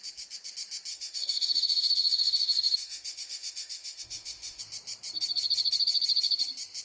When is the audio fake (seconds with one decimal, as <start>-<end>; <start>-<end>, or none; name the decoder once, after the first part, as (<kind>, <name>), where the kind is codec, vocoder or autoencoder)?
0.9-4.6 (autoencoder, DAC-VAE)